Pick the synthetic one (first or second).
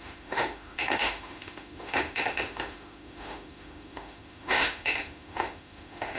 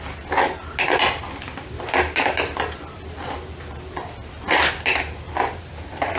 first